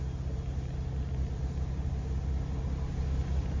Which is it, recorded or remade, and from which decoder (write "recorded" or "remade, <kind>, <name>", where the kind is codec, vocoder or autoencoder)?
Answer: recorded